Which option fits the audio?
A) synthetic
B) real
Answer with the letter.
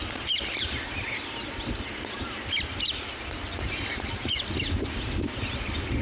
A